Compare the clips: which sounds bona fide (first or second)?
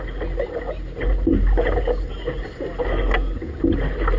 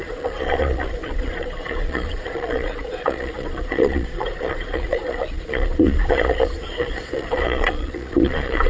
first